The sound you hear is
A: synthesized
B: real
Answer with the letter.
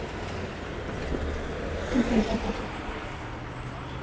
B